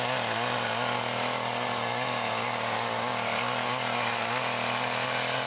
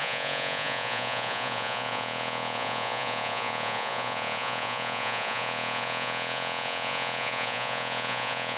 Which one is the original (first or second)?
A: first